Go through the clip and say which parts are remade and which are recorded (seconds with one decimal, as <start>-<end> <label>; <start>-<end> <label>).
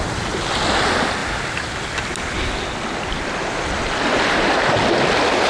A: 0.0-5.5 recorded